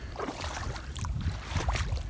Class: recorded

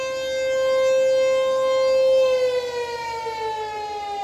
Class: recorded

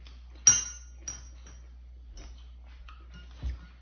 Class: recorded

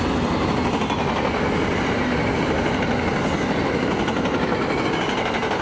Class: recorded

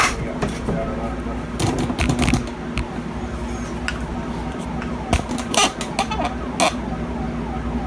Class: recorded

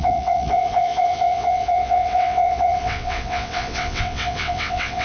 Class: remade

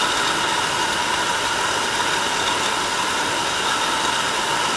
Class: recorded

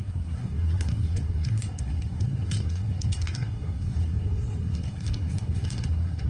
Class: remade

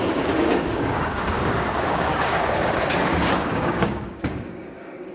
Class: remade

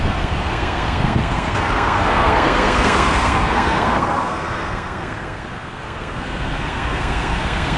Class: remade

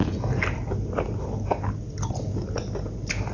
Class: recorded